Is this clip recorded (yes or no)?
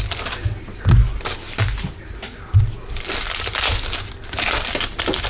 yes